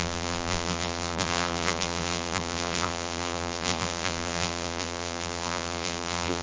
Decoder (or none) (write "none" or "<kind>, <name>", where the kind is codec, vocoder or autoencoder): vocoder, BigVGAN v2